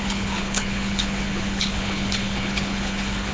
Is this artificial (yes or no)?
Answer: yes